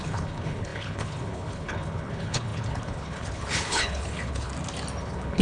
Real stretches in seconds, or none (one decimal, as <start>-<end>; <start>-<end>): 4.5-5.0

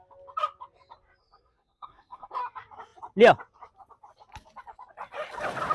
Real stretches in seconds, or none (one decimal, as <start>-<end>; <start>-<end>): 0.0-1.2; 2.4-5.7

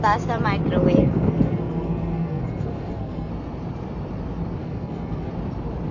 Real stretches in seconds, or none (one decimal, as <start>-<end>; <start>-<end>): 0.0-1.0; 3.3-4.6; 5.3-5.9

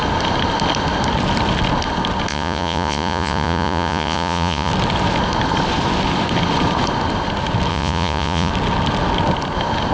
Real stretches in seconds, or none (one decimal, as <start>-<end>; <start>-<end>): 0.0-2.3; 4.7-7.7; 8.5-9.9

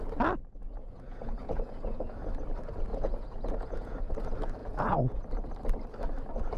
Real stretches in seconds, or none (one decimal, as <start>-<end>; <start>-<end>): 0.0-0.6; 2.3-2.9; 4.1-4.6; 5.2-6.6

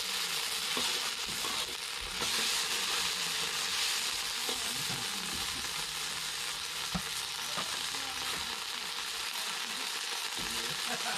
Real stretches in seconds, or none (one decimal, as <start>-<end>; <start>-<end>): 0.0-11.2

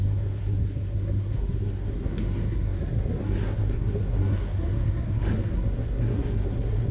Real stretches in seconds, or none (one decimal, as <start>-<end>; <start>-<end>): none

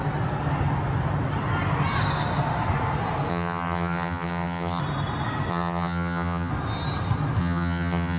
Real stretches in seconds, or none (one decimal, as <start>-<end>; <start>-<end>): 0.0-3.3; 4.8-5.5; 6.5-7.4